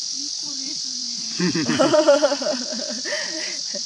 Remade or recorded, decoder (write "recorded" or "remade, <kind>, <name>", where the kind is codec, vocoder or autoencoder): remade, vocoder, Vocos